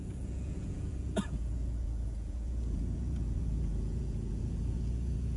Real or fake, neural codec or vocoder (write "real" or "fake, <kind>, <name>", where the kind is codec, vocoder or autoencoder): fake, vocoder, Vocos